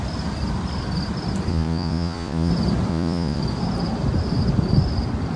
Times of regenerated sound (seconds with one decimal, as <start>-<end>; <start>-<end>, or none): 1.5-2.5; 2.9-3.4